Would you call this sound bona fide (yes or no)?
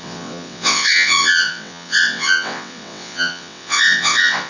no